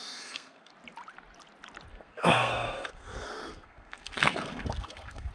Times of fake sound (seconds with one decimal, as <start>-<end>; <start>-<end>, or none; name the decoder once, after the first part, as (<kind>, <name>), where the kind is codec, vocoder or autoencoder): 0.0-0.7 (codec, SNAC); 1.9-5.3